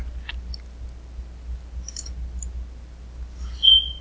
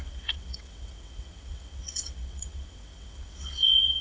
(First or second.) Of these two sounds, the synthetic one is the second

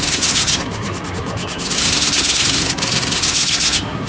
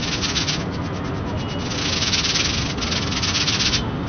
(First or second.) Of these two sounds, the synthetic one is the first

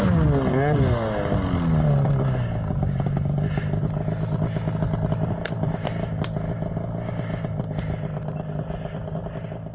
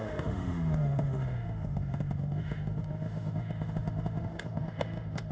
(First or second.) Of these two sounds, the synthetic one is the second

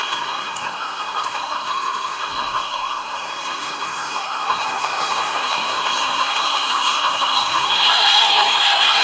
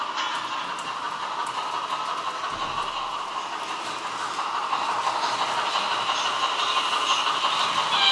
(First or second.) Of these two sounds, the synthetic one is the first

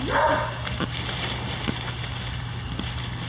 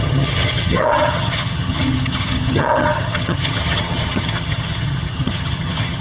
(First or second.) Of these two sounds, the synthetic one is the second